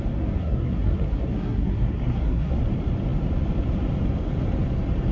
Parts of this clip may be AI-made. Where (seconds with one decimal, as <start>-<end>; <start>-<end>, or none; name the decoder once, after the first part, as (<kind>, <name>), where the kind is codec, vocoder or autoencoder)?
0.4-2.6 (codec, SNAC)